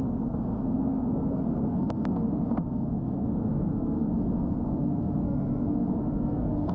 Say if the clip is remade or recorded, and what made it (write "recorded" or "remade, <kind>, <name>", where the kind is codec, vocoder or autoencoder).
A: remade, codec, SNAC